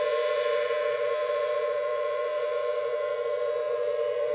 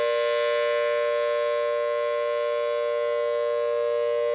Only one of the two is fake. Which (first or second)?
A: first